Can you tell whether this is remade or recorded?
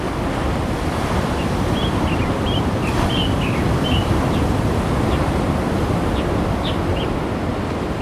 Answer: recorded